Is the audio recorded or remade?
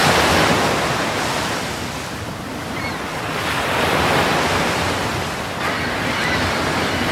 recorded